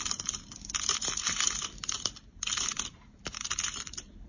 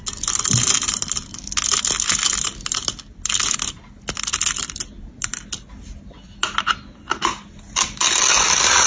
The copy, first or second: first